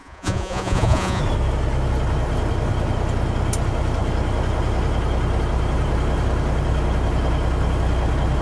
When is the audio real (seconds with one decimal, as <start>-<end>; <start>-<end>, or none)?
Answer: 1.2-8.4